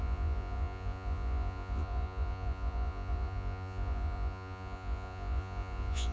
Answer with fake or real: fake